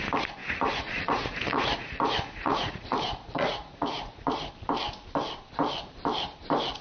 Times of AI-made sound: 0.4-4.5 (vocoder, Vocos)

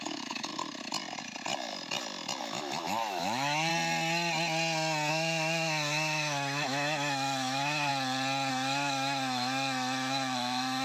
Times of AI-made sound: 0.0-0.5 (autoencoder, DAC-VAE); 2.4-3.7; 5.1-7.9; 8.5-10.8

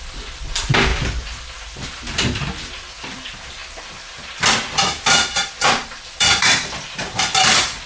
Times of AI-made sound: 0.0-0.9 (vocoder, BigVGAN v2); 2.7-3.6; 6.1-7.9

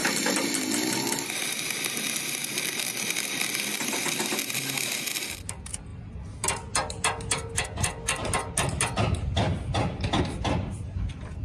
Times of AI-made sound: none